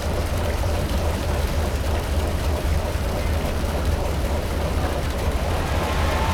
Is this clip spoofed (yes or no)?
yes